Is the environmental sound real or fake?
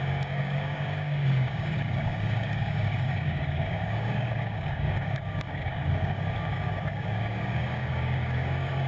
fake